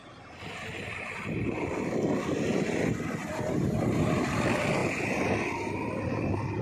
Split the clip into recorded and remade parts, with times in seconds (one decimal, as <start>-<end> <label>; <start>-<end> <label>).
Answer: 0.0-1.1 remade; 1.1-3.2 recorded; 3.2-4.3 remade; 4.3-6.6 recorded